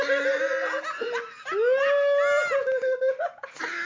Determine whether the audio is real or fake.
real